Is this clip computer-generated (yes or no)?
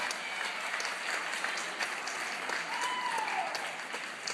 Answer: no